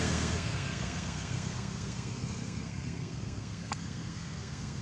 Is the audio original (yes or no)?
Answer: no